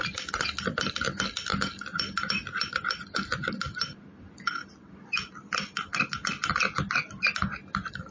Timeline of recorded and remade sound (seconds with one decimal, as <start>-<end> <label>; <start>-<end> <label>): 0.0-8.1 recorded